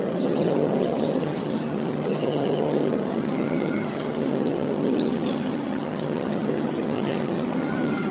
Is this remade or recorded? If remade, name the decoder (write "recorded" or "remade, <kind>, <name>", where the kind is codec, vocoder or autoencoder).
remade, vocoder, HiFi-GAN